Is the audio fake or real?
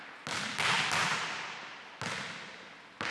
real